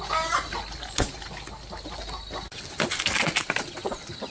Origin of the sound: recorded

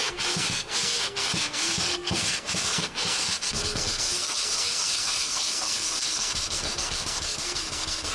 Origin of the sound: remade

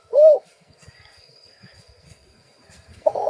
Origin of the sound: remade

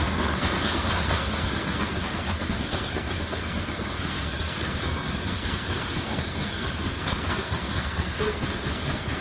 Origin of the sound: remade